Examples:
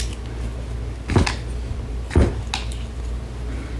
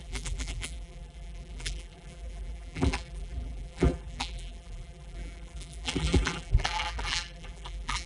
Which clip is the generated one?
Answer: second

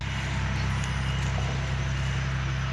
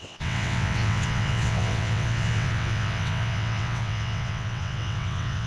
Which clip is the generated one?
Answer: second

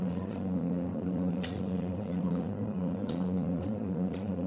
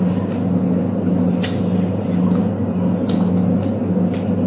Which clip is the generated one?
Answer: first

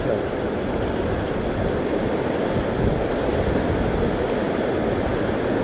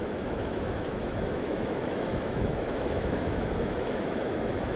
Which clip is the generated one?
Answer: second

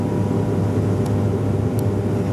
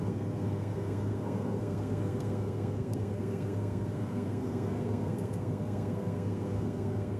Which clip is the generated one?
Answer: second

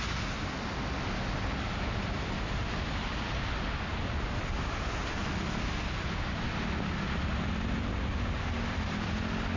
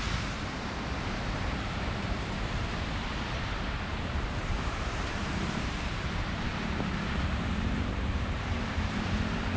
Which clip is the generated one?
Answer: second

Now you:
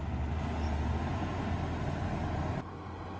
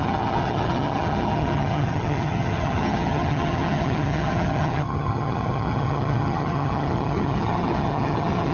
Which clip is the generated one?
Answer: second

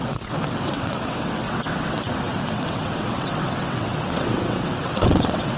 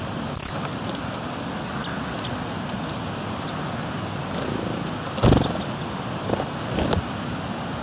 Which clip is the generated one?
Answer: first